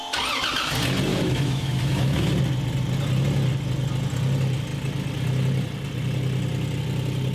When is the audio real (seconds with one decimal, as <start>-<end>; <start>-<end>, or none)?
0.0-1.1; 2.3-7.3